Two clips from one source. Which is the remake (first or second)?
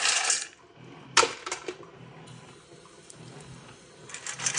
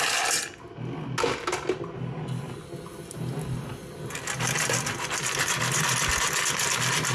first